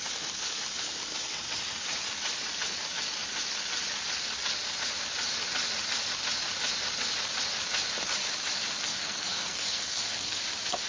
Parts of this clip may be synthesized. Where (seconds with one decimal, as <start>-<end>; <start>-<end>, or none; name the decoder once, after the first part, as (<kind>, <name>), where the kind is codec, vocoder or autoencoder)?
8.9-10.4 (codec, SNAC)